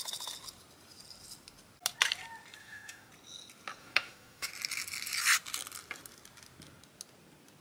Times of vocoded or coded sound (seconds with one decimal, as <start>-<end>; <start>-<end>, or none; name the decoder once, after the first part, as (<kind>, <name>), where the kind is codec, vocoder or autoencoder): 2.6-3.1 (autoencoder, DAC-VAE); 3.8-4.5